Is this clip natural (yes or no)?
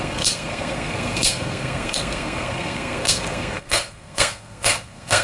no